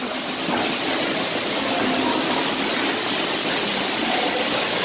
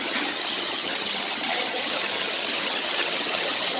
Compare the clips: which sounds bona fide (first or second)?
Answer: first